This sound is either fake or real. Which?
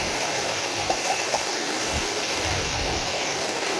fake